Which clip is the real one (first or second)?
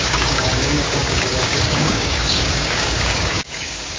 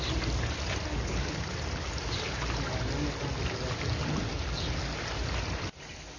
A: second